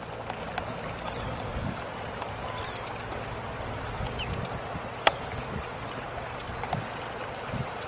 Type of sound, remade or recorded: recorded